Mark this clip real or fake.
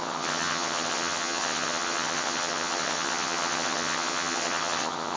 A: fake